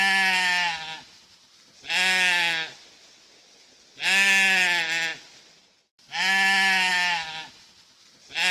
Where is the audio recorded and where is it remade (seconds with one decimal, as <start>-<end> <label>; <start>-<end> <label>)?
0.0-8.5 recorded